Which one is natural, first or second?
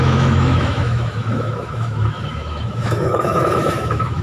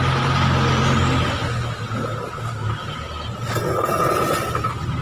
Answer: second